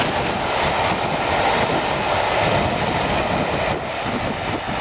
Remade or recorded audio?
recorded